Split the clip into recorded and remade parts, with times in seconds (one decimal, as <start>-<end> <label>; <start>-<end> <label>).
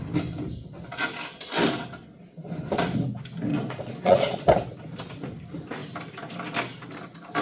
0.0-3.5 recorded; 3.5-4.4 remade; 4.4-7.4 recorded